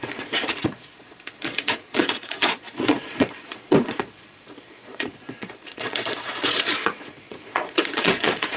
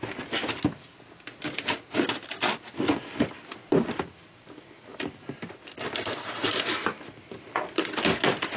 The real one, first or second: second